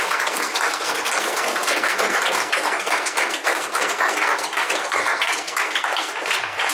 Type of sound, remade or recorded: remade